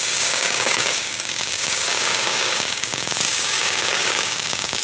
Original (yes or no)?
no